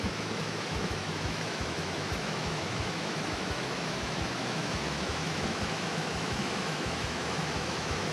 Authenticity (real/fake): fake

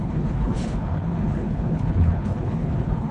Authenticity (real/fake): fake